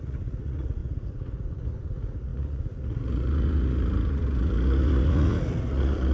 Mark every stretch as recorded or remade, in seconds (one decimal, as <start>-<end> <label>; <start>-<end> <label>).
0.0-6.1 remade